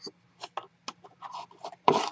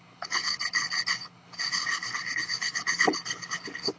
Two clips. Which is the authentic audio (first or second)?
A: first